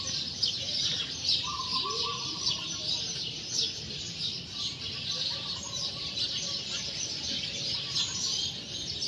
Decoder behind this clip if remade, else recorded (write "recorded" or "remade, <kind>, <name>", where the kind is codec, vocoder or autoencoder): remade, vocoder, BigVGAN v2